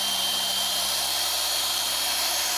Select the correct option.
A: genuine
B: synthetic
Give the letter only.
B